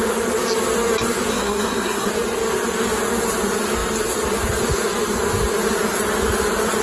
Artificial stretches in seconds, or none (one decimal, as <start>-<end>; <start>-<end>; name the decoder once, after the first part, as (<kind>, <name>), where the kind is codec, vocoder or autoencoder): 1.3-2.1 (codec, SNAC)